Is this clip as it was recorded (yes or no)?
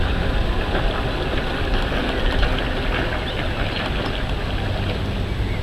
yes